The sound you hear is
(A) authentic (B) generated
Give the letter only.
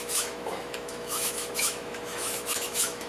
B